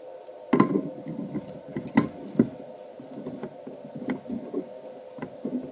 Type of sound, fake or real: real